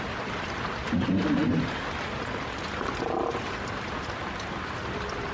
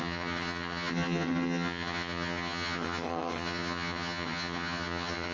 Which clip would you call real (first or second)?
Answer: first